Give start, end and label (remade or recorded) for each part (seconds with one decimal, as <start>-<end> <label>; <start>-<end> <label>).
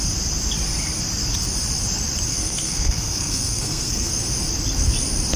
0.0-2.3 recorded; 2.3-4.1 remade; 4.1-5.4 recorded